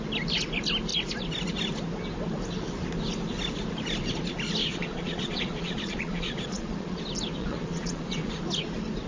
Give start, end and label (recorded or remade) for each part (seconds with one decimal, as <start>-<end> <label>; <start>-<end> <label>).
0.0-4.6 recorded; 4.6-7.0 remade; 7.0-7.4 recorded; 7.4-8.4 remade; 8.4-9.1 recorded